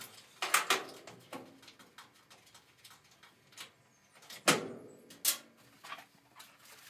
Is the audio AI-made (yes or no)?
no